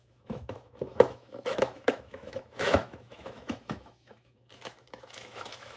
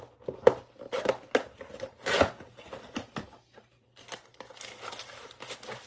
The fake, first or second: first